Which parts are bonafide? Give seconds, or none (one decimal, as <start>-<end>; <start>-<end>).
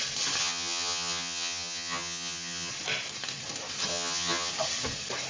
0.0-0.4; 2.7-3.9; 4.5-5.3